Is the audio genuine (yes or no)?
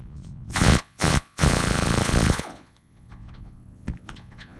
no